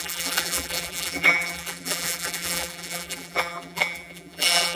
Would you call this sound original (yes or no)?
no